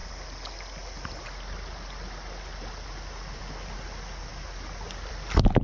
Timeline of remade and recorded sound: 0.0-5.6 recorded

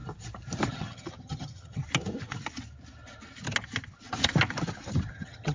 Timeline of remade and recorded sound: 0.0-0.7 recorded; 0.7-1.8 remade; 1.8-5.1 recorded; 5.1-5.5 remade